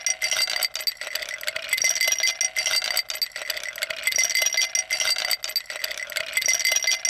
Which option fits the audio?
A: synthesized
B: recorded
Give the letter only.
B